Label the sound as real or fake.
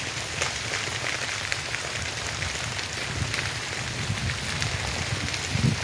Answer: real